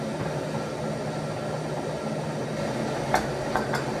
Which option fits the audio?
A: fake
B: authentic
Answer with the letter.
B